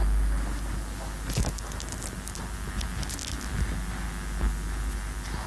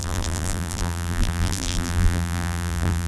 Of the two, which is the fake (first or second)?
second